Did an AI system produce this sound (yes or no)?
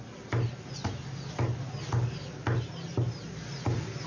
no